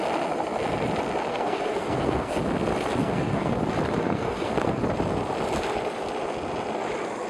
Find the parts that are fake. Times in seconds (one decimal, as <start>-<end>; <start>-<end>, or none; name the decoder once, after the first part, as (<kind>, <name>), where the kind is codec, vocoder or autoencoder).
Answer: 1.3-2.4 (codec, SNAC); 3.0-3.6; 4.0-4.8